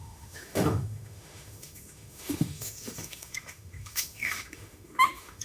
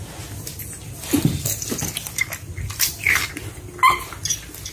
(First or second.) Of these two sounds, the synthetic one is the first